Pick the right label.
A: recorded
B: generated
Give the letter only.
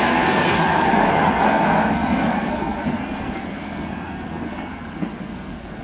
B